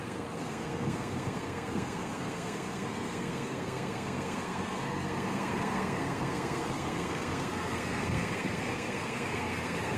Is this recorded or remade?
remade